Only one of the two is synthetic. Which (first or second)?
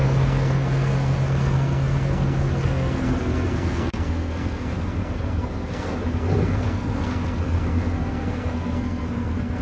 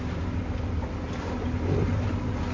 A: first